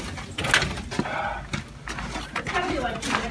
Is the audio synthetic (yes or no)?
no